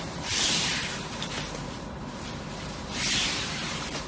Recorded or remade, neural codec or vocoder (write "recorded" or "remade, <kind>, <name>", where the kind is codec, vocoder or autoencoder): remade, vocoder, BigVGAN v2